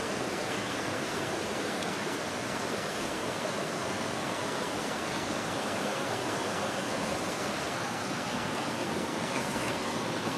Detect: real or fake fake